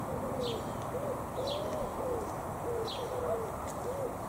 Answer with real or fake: real